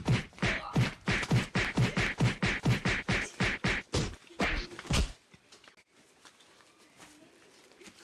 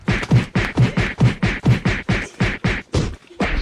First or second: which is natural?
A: first